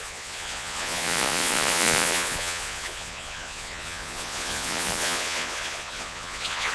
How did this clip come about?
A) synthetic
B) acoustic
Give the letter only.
A